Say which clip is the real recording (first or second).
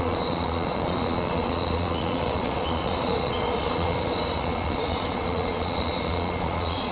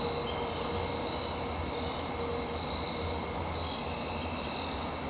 second